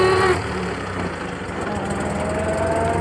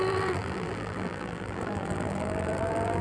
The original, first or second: first